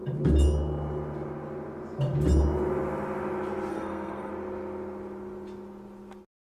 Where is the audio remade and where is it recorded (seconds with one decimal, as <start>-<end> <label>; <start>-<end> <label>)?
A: 0.0-3.7 recorded; 3.7-4.3 remade; 4.3-6.5 recorded